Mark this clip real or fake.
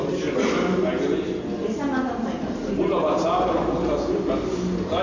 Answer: real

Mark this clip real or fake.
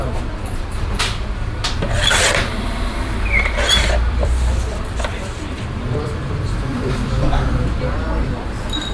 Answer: fake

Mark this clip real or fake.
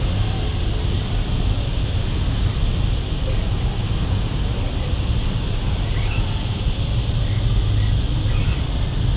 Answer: real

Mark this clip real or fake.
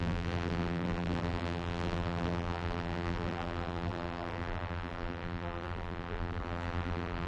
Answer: fake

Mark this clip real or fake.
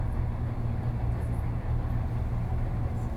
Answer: real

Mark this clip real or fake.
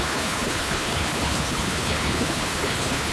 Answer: fake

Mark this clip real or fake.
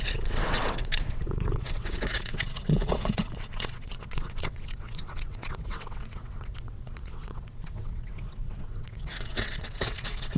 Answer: fake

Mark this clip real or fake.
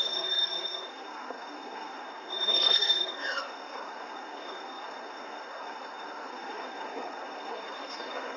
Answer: fake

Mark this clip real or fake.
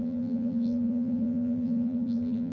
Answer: fake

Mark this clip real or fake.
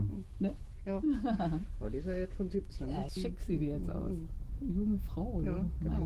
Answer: fake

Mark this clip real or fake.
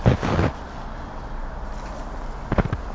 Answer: real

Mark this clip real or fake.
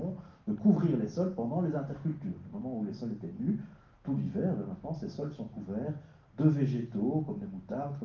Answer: real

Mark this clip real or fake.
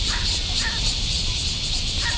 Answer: real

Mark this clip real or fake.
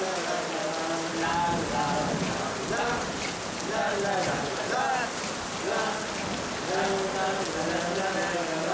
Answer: real